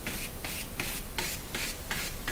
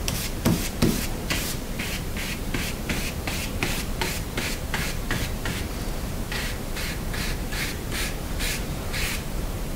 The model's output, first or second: second